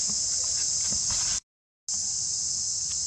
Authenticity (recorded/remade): recorded